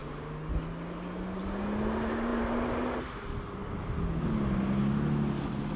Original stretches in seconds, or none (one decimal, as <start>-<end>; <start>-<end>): 0.0-5.8